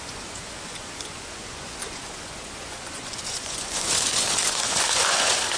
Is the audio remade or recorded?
remade